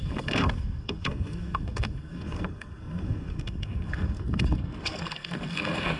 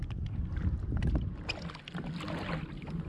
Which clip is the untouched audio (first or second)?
second